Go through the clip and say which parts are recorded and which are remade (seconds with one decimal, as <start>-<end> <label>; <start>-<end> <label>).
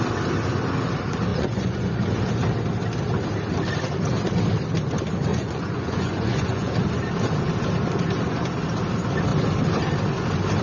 0.0-1.3 recorded; 1.3-1.9 remade; 1.9-5.3 recorded; 5.3-6.7 remade; 6.7-10.6 recorded